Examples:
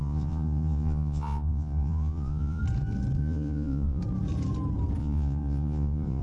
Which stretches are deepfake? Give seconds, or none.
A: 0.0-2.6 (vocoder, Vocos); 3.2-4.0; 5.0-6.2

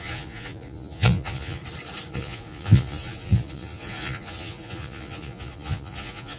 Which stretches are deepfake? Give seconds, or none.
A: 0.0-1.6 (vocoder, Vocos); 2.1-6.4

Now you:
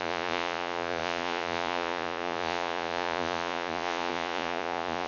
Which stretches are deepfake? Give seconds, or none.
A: 0.0-5.1 (vocoder, Vocos)

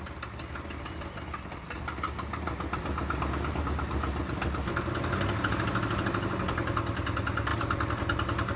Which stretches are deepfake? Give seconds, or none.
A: none

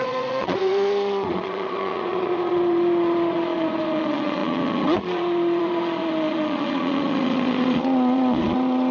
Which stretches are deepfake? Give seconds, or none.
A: 0.0-8.9 (vocoder, Vocos)

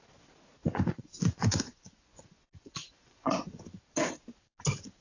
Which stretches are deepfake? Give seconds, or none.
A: 0.6-3.6 (vocoder, Vocos)

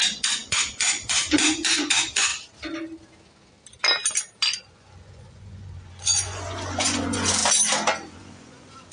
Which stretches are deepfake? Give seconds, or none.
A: 0.0-2.3 (vocoder, Vocos); 4.6-7.4; 8.2-8.9